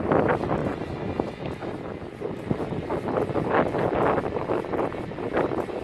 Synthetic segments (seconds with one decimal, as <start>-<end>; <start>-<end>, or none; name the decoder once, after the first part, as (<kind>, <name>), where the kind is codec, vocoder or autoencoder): none